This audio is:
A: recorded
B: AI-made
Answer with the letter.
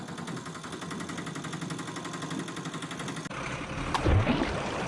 A